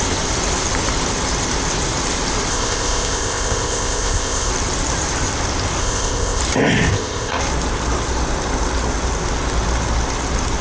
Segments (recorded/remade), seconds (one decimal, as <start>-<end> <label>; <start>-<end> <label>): 0.0-2.5 recorded; 2.5-4.5 remade; 4.5-5.8 recorded; 5.8-6.4 remade; 6.4-6.9 recorded; 6.9-7.4 remade; 7.4-10.6 recorded